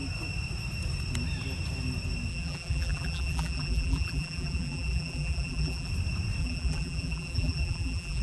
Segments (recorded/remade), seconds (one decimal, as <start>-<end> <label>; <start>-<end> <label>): 0.0-2.3 recorded; 2.3-5.9 remade; 5.9-6.4 recorded; 6.4-8.2 remade